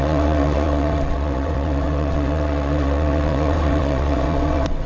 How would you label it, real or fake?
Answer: fake